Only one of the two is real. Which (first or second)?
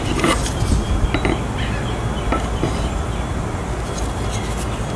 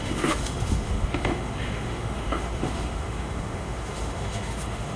first